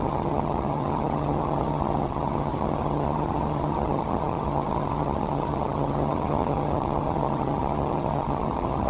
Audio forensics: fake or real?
fake